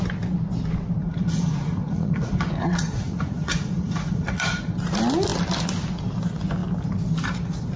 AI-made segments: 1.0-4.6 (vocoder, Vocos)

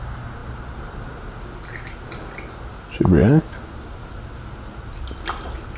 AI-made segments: none

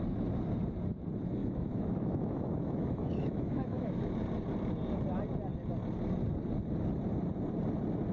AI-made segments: 1.4-4.1 (autoencoder, DAC-VAE)

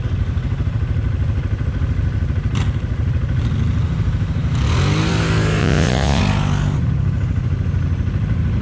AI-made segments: 5.6-6.2 (vocoder, Vocos)